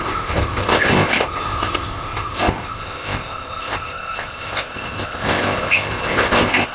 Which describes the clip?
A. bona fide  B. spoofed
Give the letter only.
B